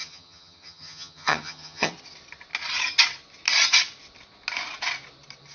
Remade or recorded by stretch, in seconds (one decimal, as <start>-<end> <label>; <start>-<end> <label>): 0.0-1.9 remade; 1.9-5.5 recorded